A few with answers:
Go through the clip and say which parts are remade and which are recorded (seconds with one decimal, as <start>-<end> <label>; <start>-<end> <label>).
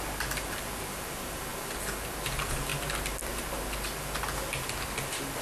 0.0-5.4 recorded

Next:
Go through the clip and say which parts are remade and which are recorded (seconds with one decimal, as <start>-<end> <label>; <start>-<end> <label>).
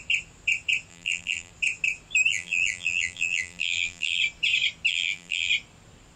0.0-0.9 recorded; 0.9-1.5 remade; 1.5-2.3 recorded; 2.3-4.2 remade; 4.2-4.9 recorded; 4.9-5.5 remade; 5.5-6.2 recorded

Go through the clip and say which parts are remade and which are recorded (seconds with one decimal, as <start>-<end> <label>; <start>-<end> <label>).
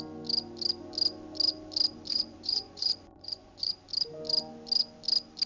0.0-2.1 recorded; 2.1-3.7 remade; 3.7-5.5 recorded